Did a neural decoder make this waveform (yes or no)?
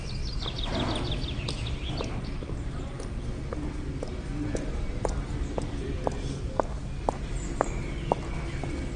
no